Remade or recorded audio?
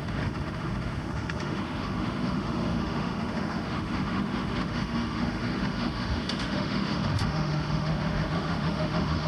remade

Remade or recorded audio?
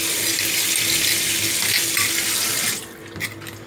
recorded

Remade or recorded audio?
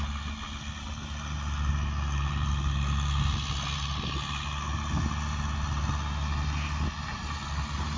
recorded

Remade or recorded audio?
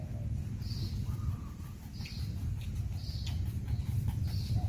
recorded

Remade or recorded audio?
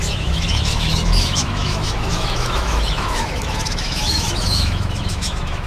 remade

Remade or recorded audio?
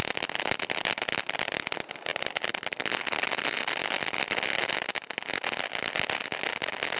recorded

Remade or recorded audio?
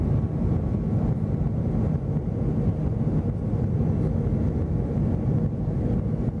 recorded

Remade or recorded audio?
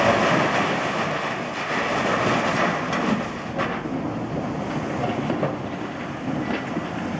recorded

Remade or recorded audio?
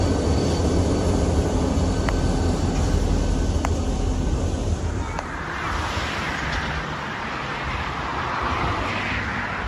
recorded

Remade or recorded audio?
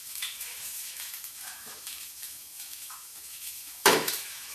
remade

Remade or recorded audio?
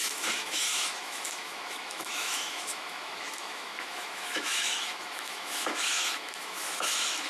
remade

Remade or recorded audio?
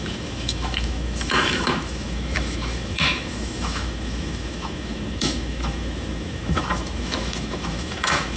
remade